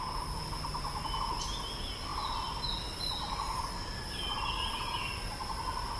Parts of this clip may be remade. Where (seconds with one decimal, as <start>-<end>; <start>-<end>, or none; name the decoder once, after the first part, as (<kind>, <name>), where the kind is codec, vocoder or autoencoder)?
none